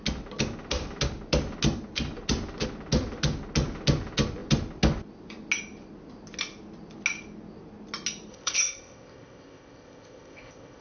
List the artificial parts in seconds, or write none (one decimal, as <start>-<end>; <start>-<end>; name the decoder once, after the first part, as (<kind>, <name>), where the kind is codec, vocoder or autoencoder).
8.3-10.8 (codec, ZipCodec)

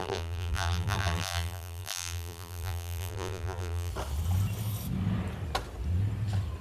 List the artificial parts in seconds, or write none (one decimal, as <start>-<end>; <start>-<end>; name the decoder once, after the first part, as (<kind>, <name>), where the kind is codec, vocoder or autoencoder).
0.0-3.9 (vocoder, BigVGAN v2)

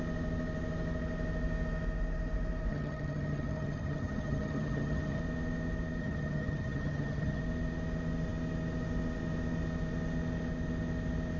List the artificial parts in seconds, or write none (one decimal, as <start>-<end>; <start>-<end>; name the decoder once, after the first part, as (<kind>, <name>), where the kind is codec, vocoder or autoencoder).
2.7-5.2 (vocoder, HiFi-GAN); 6.0-7.4

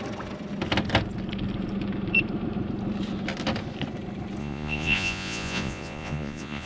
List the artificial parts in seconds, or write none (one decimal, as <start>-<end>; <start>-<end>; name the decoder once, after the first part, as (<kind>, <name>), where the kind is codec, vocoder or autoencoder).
4.4-6.7 (vocoder, Vocos)

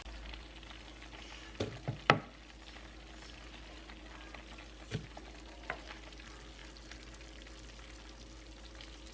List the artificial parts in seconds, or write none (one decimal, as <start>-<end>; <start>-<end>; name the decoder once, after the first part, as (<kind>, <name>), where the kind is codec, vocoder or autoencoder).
none

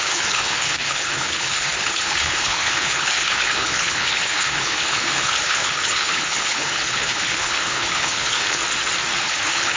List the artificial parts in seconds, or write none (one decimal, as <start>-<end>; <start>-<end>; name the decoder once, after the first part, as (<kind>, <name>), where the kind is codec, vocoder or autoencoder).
0.0-8.6 (codec, HILCodec); 9.2-9.8